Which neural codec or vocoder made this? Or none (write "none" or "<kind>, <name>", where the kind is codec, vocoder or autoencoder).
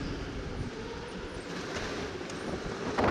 none